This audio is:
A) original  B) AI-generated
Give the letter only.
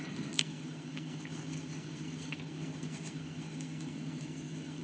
B